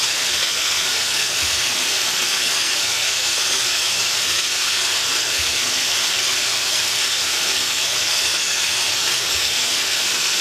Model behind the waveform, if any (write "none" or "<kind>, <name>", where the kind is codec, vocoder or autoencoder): codec, SNAC